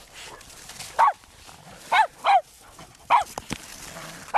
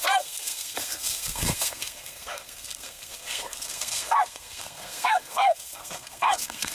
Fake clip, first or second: second